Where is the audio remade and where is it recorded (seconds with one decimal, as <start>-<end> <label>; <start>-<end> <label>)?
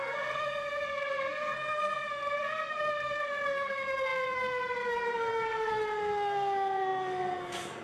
0.0-7.8 remade